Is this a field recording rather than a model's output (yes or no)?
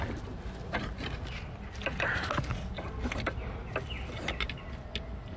yes